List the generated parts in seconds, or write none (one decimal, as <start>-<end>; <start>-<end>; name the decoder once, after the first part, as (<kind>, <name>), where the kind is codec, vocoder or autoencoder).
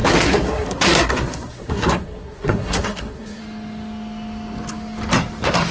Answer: 0.0-3.4 (codec, SNAC)